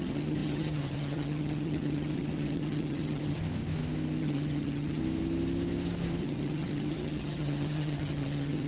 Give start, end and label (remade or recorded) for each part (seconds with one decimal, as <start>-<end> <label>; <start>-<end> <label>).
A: 0.0-3.4 remade; 3.4-4.2 recorded; 4.2-5.0 remade; 5.0-6.2 recorded; 6.2-8.7 remade